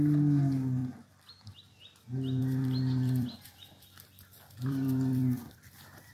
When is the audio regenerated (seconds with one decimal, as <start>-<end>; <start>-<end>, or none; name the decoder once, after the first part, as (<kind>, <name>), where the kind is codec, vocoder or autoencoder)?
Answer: 0.8-2.0 (vocoder, BigVGAN v2); 2.4-6.1

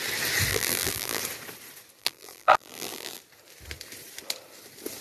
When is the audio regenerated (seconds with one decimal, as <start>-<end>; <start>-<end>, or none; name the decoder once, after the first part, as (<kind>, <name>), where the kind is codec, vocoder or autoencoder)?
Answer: 0.5-1.2 (vocoder, BigVGAN v2); 2.0-3.2